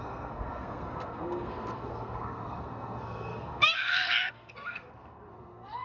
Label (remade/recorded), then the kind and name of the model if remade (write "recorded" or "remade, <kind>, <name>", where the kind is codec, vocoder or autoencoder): remade, codec, SNAC